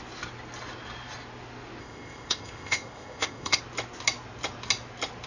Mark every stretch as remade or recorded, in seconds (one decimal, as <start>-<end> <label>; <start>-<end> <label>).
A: 0.0-1.8 recorded; 1.8-3.6 remade; 3.6-5.3 recorded